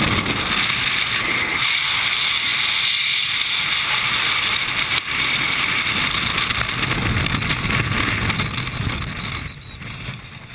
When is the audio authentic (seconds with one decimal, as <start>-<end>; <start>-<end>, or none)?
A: 0.0-10.5

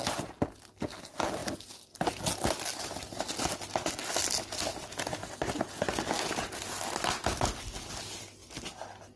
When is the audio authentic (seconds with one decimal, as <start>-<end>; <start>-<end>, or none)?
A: 0.0-9.2

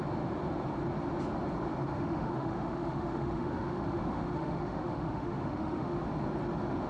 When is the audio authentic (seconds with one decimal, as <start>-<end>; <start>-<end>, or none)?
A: 0.0-1.9; 6.0-6.9